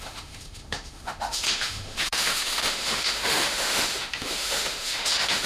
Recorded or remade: remade